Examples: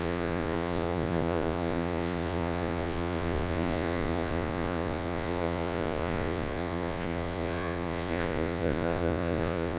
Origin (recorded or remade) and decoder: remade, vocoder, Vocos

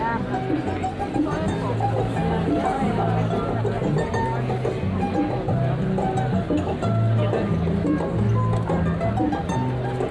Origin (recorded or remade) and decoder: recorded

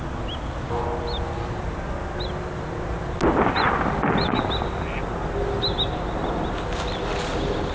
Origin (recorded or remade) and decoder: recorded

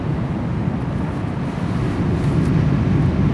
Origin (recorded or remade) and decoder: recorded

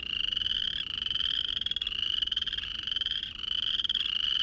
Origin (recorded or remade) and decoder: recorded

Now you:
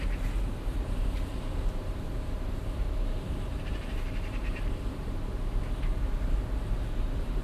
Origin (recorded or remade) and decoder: remade, vocoder, BigVGAN v2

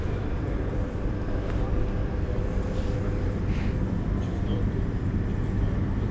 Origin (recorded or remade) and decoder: remade, vocoder, BigVGAN v2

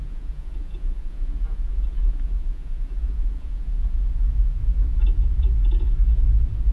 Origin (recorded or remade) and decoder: remade, vocoder, Vocos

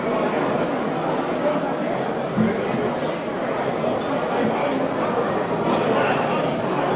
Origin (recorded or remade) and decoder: recorded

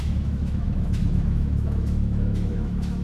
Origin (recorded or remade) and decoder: remade, autoencoder, DAC-VAE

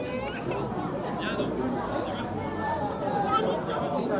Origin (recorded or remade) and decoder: recorded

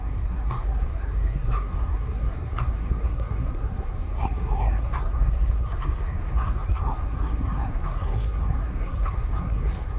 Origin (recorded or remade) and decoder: remade, codec, SNAC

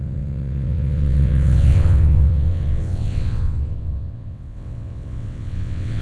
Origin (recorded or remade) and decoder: remade, vocoder, WaveNeXt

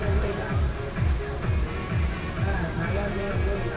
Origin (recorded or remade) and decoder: recorded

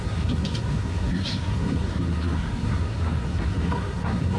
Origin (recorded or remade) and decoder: remade, codec, SNAC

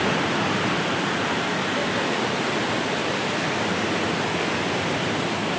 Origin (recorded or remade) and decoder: recorded